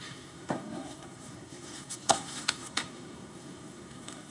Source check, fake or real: fake